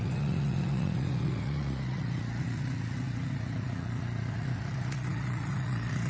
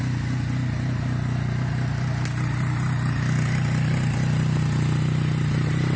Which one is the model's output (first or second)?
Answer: first